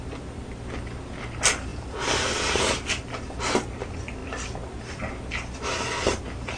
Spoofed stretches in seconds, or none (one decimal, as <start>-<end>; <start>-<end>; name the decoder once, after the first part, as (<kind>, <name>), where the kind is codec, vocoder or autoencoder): none